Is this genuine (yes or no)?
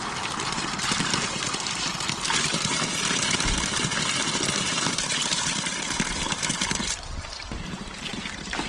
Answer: no